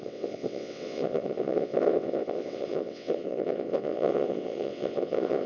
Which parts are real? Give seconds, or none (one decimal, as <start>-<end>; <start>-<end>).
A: none